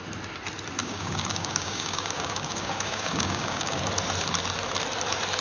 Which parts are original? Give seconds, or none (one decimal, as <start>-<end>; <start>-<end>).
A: 0.0-0.8; 3.8-5.4